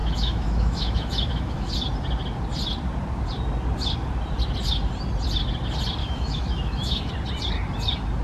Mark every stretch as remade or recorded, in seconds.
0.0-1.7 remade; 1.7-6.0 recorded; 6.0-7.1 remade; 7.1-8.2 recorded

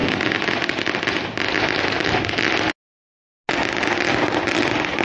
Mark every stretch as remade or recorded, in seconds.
0.0-5.0 recorded